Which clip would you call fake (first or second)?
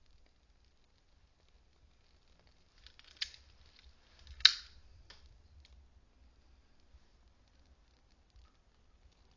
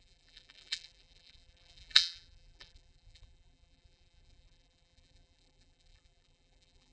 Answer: second